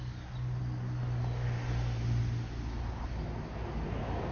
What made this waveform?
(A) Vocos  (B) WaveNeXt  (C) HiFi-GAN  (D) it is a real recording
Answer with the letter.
D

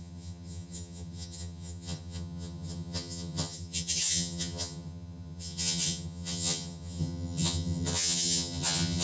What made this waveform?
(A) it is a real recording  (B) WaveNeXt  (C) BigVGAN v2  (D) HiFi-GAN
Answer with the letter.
D